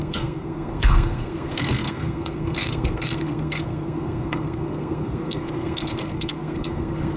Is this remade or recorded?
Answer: remade